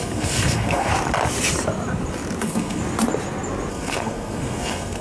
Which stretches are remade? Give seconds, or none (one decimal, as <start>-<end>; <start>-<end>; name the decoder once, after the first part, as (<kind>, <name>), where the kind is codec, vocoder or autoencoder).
0.0-0.9 (codec, SNAC); 2.4-2.8; 3.7-5.0